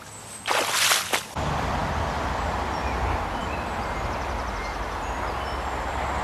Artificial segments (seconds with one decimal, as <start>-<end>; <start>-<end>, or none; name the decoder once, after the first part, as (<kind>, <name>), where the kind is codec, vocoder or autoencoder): none